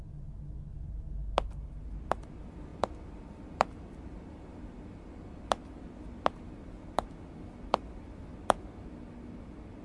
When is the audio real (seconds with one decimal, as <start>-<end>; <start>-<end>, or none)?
0.0-2.7; 4.3-8.3

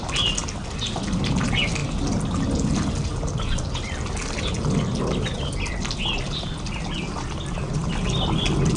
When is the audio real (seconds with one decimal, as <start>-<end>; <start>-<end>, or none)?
0.0-8.8

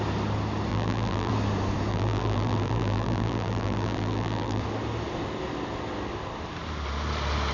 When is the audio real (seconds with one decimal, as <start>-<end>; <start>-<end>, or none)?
0.0-0.7; 1.3-1.9; 4.6-7.5

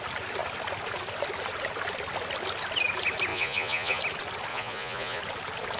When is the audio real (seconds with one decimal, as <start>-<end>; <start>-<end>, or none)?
0.0-3.3; 4.0-4.5; 5.2-5.8

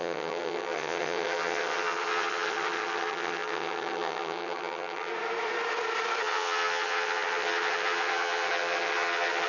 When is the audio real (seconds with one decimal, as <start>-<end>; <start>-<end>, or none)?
5.1-6.2

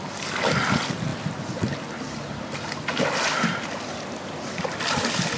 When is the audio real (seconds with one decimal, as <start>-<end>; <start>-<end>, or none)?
0.0-5.4

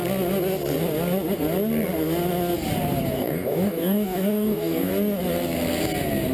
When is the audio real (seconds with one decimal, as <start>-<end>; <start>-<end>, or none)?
0.0-3.0; 4.9-6.3